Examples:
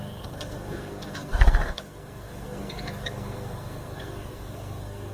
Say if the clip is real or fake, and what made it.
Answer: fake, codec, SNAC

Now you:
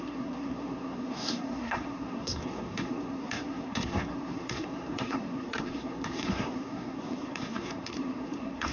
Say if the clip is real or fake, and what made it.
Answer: fake, codec, SNAC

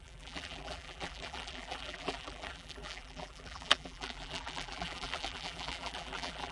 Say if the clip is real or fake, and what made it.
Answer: fake, vocoder, BigVGAN v2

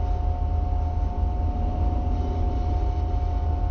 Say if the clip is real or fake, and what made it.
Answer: real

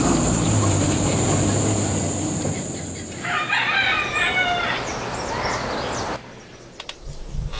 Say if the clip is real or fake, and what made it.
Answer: real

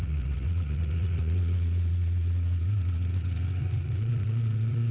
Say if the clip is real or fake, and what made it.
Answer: fake, vocoder, Vocos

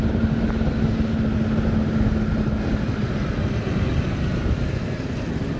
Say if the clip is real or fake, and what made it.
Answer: real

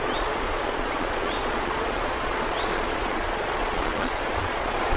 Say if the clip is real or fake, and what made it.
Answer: fake, vocoder, Vocos